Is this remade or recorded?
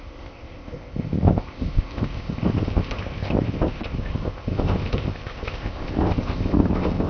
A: remade